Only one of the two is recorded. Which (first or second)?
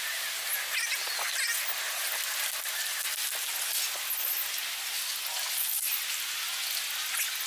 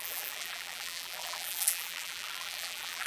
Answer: first